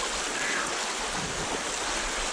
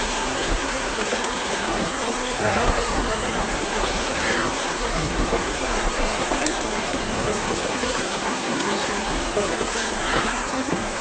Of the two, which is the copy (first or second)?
second